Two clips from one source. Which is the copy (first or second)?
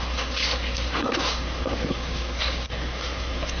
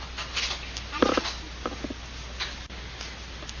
first